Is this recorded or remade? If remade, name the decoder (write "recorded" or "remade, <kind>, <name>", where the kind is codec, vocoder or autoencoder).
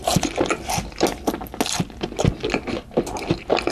recorded